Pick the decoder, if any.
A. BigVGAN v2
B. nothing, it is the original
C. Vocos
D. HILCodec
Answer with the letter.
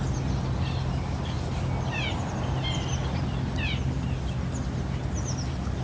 B